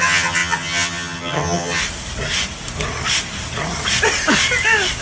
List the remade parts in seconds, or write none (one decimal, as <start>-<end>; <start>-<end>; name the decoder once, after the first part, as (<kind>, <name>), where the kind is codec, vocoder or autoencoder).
0.0-1.8 (vocoder, HiFi-GAN)